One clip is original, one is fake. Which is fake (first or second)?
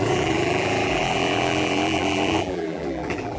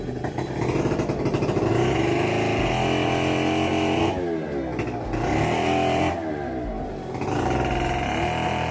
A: first